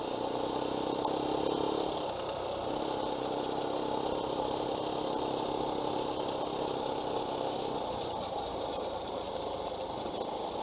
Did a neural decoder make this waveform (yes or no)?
no